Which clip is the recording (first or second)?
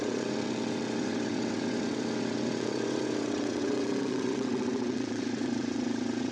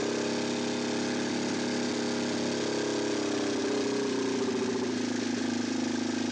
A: second